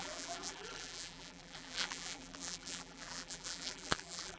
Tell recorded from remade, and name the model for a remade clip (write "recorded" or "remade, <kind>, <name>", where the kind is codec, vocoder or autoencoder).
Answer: remade, vocoder, BigVGAN v2